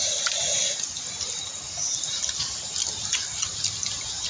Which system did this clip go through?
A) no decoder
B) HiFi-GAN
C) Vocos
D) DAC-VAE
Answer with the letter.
A